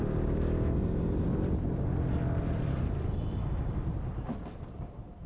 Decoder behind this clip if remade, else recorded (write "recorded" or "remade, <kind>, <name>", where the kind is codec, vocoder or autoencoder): recorded